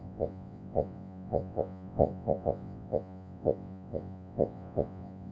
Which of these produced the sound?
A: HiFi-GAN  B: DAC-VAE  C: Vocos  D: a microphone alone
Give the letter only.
C